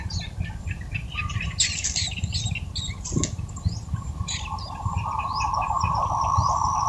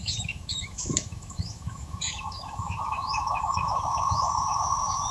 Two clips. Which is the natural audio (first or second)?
first